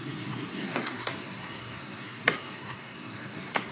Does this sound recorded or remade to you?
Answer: remade